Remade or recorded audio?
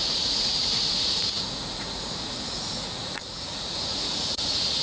remade